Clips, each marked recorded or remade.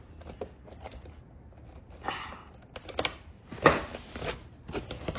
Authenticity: recorded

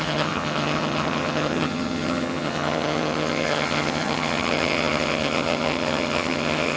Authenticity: remade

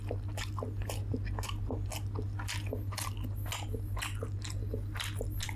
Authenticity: recorded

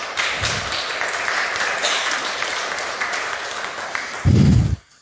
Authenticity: recorded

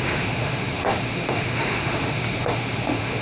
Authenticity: remade